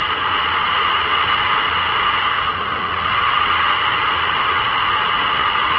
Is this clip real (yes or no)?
no